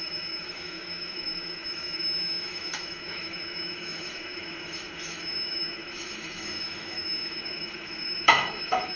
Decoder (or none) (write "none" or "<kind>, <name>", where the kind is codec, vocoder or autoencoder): autoencoder, DAC-VAE